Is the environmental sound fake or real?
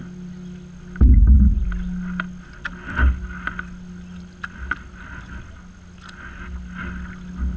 real